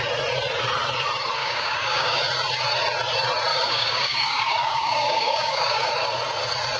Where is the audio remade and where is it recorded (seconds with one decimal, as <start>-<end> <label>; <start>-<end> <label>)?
0.0-1.4 recorded; 1.4-2.2 remade; 2.2-3.5 recorded; 3.5-5.9 remade; 5.9-6.8 recorded